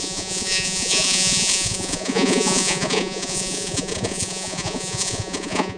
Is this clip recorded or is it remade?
remade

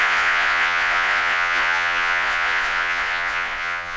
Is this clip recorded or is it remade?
remade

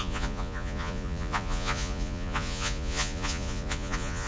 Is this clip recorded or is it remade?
remade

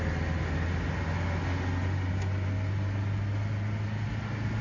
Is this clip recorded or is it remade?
recorded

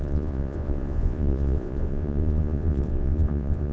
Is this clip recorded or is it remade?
remade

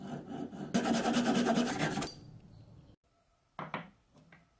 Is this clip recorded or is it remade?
recorded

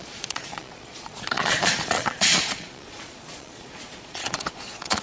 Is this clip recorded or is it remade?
remade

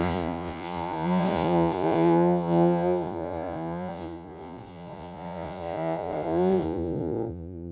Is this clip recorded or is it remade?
remade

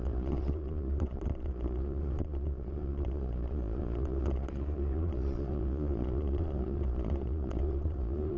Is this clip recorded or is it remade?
remade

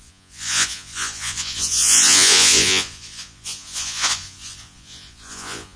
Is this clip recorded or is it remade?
remade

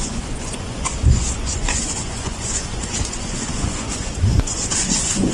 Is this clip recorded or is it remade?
remade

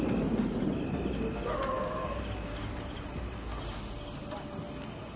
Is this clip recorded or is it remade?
recorded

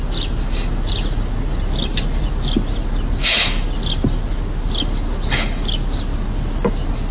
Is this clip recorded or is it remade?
recorded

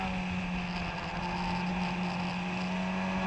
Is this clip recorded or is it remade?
recorded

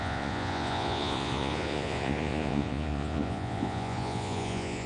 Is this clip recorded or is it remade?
remade